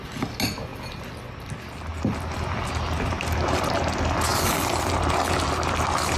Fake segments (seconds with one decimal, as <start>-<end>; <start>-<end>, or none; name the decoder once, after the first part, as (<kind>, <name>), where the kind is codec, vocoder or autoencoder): 1.9-3.8 (vocoder, BigVGAN v2); 4.3-4.9

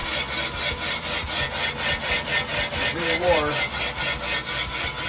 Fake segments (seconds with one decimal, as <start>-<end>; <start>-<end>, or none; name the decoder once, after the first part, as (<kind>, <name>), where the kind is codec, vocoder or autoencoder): 2.9-3.8 (vocoder, BigVGAN v2)

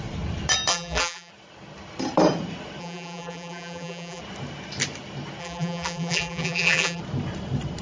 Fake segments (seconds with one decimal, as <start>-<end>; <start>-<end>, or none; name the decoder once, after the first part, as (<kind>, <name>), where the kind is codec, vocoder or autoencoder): 0.7-1.3 (vocoder, BigVGAN v2); 2.8-4.2; 5.4-7.0